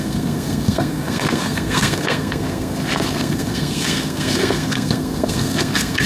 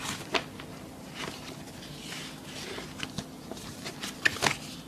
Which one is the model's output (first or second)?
first